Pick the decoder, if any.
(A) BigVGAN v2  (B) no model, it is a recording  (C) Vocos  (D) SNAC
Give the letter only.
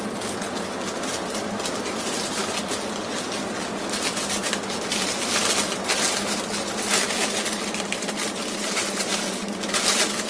B